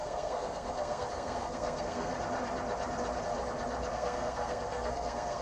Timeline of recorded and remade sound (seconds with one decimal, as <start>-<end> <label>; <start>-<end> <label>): 0.0-2.1 remade; 2.1-3.9 recorded; 3.9-5.4 remade